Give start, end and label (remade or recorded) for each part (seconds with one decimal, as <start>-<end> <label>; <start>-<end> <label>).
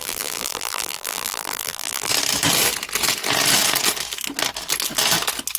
0.0-2.1 remade; 2.1-5.6 recorded